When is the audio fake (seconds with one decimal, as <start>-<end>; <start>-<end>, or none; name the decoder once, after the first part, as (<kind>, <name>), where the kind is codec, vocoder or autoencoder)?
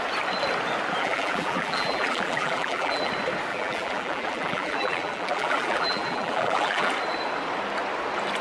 1.0-3.1 (vocoder, BigVGAN v2); 3.5-6.9